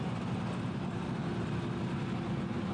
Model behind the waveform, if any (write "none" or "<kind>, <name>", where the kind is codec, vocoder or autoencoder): none